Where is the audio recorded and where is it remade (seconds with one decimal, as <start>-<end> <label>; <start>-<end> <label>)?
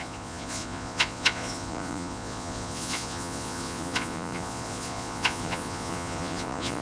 0.0-6.8 remade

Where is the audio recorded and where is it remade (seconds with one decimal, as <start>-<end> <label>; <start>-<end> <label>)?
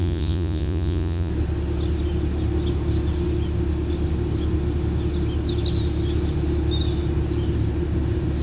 0.0-1.3 remade; 1.3-8.4 recorded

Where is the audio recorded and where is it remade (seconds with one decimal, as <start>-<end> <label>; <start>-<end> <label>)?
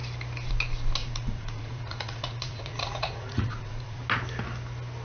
0.0-1.0 recorded; 1.0-4.0 remade; 4.0-5.0 recorded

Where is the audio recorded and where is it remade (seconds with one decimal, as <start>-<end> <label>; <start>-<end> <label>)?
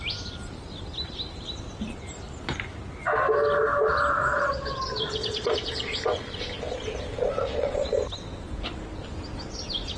0.0-4.2 recorded; 4.2-6.0 remade; 6.0-7.4 recorded; 7.4-7.9 remade; 7.9-10.0 recorded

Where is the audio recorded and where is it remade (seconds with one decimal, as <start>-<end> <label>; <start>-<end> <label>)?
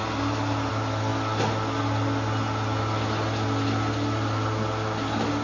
0.0-5.4 recorded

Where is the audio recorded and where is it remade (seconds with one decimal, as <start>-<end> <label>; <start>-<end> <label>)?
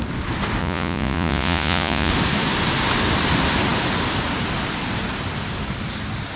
0.0-0.6 recorded; 0.6-2.1 remade; 2.1-6.4 recorded